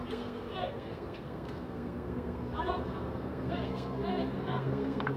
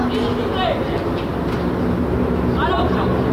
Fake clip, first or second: first